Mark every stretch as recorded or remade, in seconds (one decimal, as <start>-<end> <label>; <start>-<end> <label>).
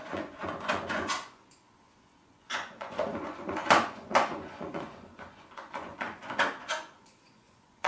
0.0-7.9 remade